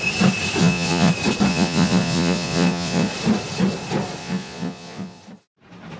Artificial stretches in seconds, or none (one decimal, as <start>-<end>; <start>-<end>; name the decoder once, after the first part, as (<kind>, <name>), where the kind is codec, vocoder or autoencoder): 0.6-1.1 (vocoder, Vocos); 1.5-3.1; 4.2-5.2